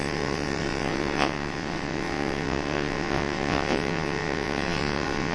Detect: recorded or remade remade